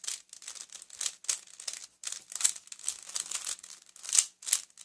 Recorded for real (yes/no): yes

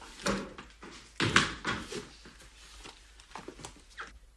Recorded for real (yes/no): yes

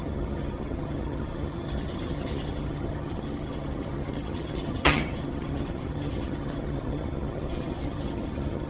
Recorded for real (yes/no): no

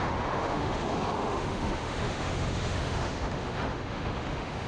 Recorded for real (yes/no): no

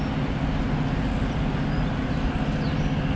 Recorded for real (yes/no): yes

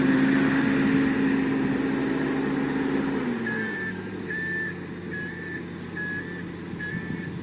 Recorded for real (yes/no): yes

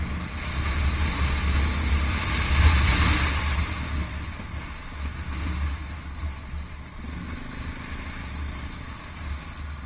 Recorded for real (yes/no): yes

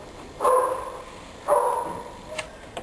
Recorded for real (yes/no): yes